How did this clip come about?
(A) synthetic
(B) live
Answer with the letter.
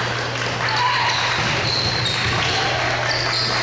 B